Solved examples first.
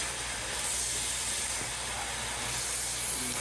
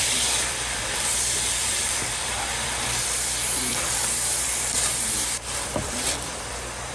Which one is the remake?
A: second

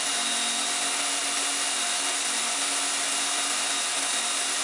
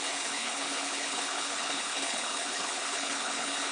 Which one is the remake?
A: second